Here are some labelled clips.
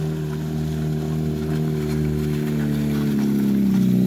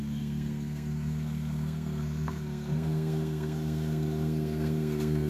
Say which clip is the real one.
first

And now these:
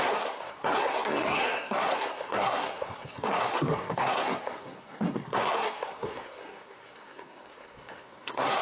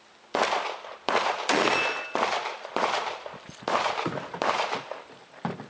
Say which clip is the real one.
second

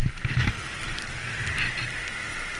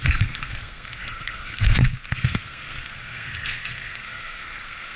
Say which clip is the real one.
first